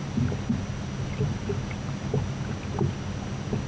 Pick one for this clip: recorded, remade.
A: recorded